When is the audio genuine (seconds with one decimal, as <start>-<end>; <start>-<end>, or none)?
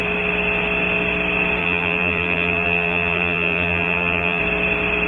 0.0-1.6; 4.4-5.1